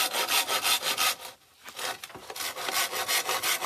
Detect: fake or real real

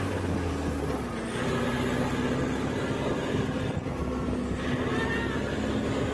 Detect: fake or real real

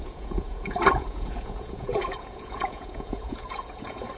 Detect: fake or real fake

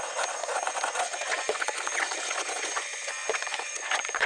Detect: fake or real fake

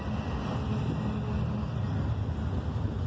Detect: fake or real real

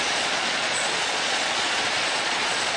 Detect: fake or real fake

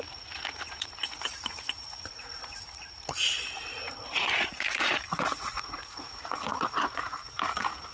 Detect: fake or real fake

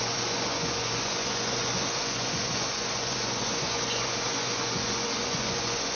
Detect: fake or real fake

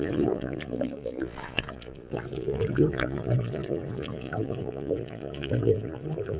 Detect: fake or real fake